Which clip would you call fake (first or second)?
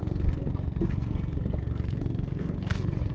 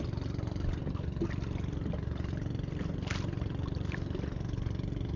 first